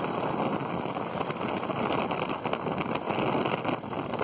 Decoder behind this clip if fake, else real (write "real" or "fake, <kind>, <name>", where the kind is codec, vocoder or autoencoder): real